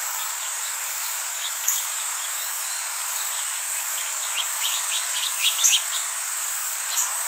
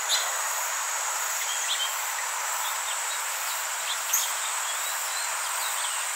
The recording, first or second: second